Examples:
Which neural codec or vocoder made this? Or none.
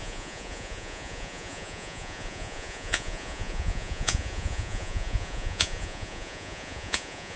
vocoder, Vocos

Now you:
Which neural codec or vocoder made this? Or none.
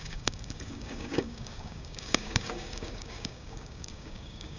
codec, DAC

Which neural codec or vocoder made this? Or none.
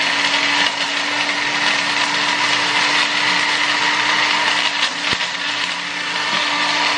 none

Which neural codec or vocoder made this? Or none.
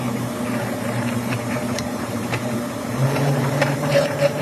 vocoder, BigVGAN v2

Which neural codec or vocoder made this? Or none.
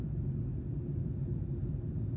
none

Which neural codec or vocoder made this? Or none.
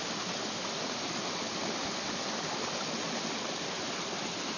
none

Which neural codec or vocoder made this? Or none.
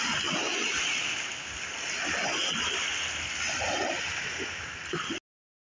none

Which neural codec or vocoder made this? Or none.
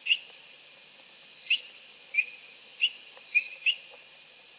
none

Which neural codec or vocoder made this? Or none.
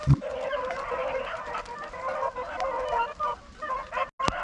none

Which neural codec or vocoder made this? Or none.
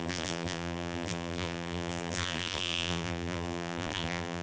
vocoder, BigVGAN v2